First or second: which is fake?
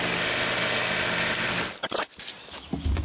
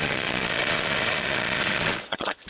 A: second